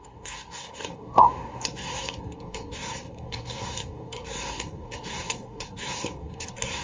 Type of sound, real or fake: fake